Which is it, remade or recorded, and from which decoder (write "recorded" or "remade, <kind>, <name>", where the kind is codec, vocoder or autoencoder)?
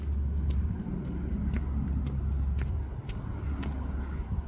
recorded